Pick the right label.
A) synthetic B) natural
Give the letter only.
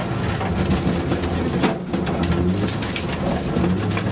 B